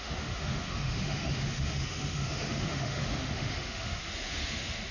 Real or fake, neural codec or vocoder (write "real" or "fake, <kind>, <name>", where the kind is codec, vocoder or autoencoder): fake, autoencoder, DAC-VAE